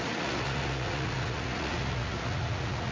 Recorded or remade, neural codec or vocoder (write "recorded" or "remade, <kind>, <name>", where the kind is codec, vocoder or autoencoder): remade, vocoder, Vocos